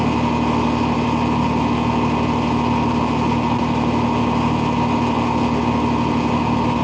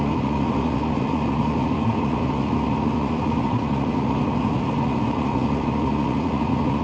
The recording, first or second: first